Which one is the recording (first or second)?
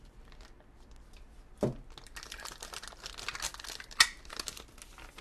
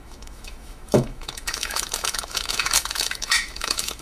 first